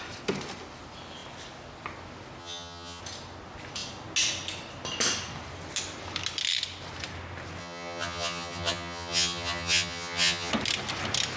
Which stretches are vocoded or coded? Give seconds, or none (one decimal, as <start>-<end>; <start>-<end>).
2.4-3.0; 7.6-10.5